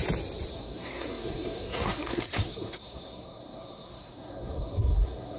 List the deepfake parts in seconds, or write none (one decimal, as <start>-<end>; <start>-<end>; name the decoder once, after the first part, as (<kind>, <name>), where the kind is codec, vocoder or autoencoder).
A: 0.5-5.4 (codec, SNAC)